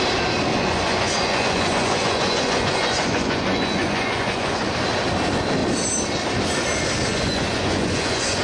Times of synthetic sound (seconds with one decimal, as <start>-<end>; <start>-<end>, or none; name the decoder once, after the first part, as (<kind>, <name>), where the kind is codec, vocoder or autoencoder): 0.5-4.7 (vocoder, Vocos); 7.1-8.4